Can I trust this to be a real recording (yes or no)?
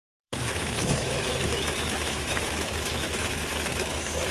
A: no